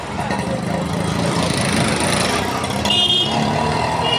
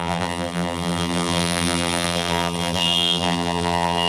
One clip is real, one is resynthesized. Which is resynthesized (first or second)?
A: second